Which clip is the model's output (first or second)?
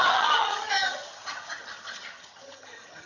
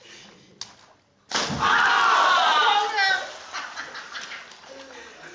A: first